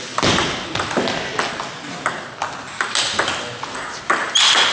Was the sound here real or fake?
real